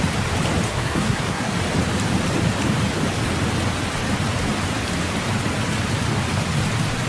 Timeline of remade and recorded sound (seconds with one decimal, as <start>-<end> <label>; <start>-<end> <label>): 0.0-0.7 recorded; 0.7-1.5 remade; 1.5-7.1 recorded